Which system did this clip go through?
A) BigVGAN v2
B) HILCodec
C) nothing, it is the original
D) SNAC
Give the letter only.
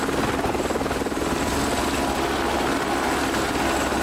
C